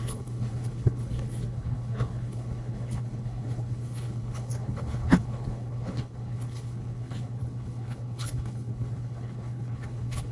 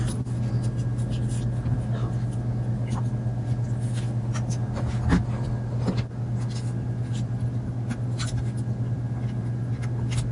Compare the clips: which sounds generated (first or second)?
first